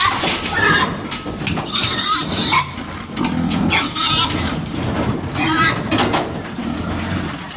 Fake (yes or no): no